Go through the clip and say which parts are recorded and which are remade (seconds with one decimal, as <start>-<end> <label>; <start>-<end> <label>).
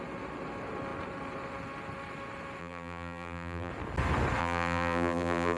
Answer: 0.0-2.6 recorded; 2.6-3.7 remade; 3.7-4.4 recorded; 4.4-5.6 remade